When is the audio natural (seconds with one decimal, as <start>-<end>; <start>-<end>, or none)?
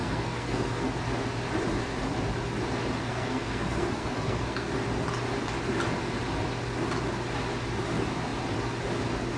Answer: 0.9-3.0; 4.7-9.4